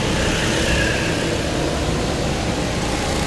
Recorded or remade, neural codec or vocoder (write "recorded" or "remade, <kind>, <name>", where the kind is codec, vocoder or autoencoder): recorded